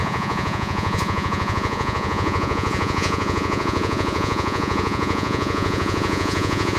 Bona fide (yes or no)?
no